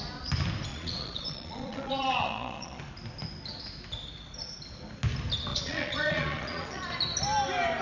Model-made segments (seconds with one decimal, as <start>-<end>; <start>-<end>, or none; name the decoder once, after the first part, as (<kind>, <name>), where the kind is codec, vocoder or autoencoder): 0.7-2.8 (vocoder, Vocos); 5.5-6.8